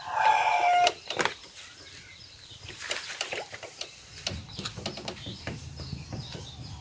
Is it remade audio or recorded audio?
recorded